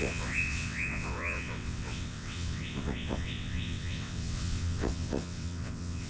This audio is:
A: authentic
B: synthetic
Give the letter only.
B